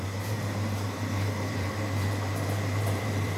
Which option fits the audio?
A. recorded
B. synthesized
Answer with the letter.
B